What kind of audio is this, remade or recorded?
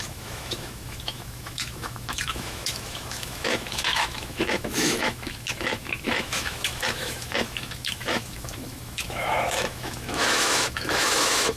remade